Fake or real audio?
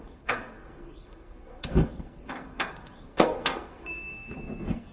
fake